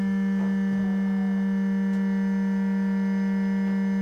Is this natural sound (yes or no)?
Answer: yes